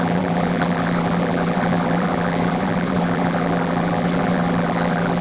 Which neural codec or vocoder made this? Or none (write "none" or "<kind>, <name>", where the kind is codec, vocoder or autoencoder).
vocoder, BigVGAN v2